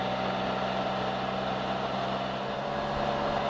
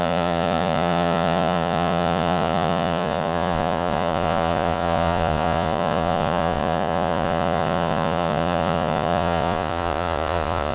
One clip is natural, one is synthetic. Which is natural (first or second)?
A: first